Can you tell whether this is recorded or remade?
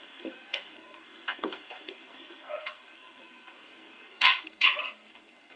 remade